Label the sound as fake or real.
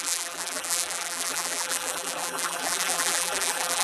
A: fake